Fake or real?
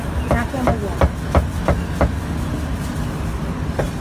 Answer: real